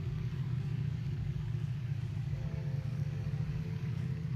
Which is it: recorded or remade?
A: remade